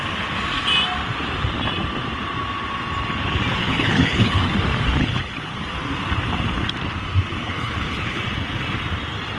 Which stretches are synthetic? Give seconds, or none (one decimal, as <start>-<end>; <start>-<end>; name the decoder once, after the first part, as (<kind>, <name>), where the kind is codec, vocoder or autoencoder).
3.6-4.5 (codec, HILCodec); 5.0-5.6; 7.3-8.2